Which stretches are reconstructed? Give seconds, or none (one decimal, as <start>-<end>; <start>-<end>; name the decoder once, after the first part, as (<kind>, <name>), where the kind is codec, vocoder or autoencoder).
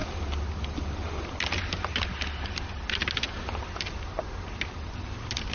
none